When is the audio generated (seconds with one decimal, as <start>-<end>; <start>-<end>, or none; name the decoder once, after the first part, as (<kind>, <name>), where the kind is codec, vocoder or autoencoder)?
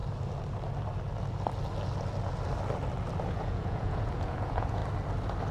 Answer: 3.3-4.8 (vocoder, Vocos)